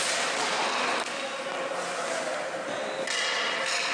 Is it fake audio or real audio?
real